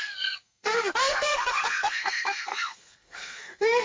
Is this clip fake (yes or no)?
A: yes